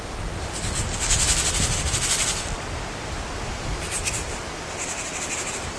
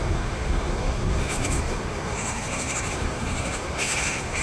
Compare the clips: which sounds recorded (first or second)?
first